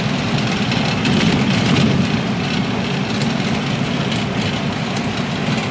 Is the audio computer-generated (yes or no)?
no